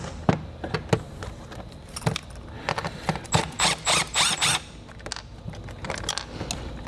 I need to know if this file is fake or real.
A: real